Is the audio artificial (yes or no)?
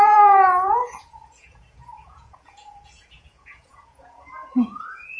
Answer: yes